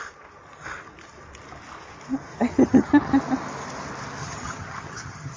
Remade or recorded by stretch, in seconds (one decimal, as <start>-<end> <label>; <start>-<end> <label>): 0.0-2.3 recorded; 2.3-3.2 remade; 3.2-4.2 recorded; 4.2-5.4 remade

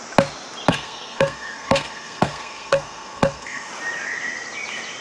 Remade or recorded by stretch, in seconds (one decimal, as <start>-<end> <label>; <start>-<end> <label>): 0.0-0.7 recorded; 0.7-3.7 remade; 3.7-5.0 recorded